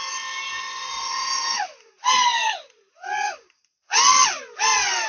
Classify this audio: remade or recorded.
recorded